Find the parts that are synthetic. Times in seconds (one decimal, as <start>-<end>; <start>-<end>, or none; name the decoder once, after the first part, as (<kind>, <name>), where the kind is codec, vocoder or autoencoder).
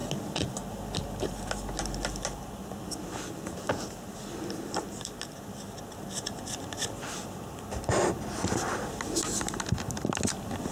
none